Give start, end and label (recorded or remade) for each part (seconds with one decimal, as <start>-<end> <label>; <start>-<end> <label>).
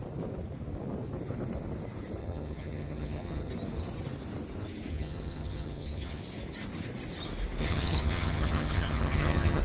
0.0-2.2 recorded; 2.2-3.5 remade; 3.5-4.9 recorded; 4.9-6.2 remade; 6.2-7.6 recorded; 7.6-9.6 remade